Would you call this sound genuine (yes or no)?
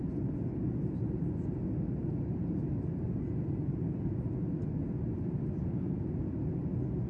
yes